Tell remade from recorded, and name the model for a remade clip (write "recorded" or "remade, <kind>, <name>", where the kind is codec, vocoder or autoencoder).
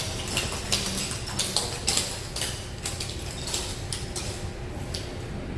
recorded